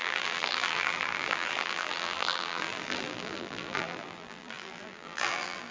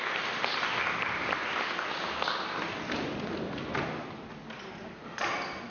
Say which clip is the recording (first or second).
second